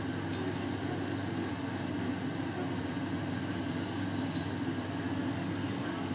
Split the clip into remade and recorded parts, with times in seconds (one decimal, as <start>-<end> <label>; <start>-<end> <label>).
0.0-5.2 recorded; 5.2-6.1 remade